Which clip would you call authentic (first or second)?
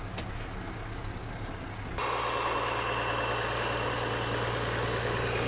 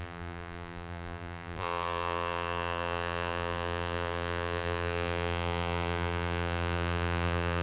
first